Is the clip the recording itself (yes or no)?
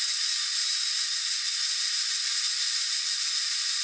yes